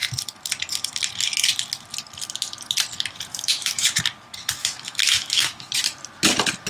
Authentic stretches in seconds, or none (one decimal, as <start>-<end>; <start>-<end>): 0.0-3.3; 4.0-4.6; 5.7-6.7